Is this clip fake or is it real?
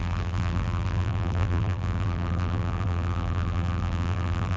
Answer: fake